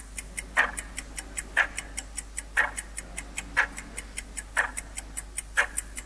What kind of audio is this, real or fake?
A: real